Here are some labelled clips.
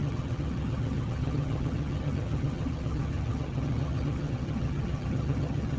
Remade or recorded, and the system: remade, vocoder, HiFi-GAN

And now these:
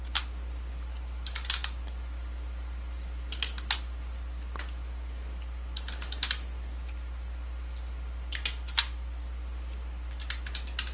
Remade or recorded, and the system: recorded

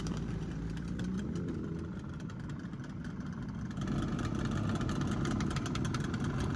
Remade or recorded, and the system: remade, vocoder, BigVGAN v2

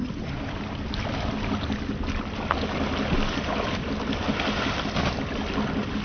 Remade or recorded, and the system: recorded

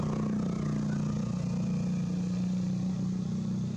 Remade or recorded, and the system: recorded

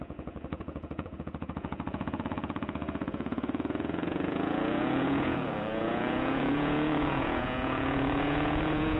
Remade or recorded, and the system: remade, vocoder, Vocos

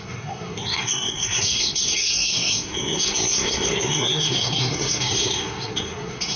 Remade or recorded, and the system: remade, codec, SNAC